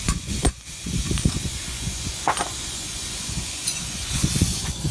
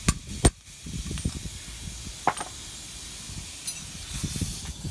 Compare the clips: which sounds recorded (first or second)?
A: second